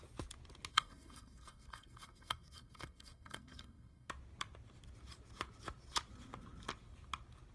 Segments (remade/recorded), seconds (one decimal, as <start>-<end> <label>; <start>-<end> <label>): 0.0-0.7 recorded; 0.7-4.1 remade; 4.1-7.5 recorded